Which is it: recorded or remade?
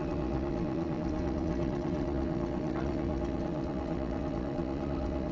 remade